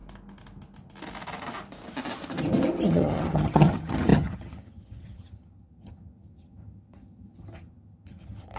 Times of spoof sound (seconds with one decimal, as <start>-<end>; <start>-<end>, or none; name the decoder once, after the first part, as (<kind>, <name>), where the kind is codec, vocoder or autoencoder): 2.9-8.6 (vocoder, HiFi-GAN)